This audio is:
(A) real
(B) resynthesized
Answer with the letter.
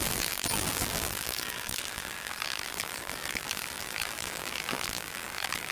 B